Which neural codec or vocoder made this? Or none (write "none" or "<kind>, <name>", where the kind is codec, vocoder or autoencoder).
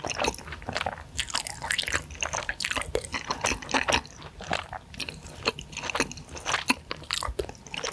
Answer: none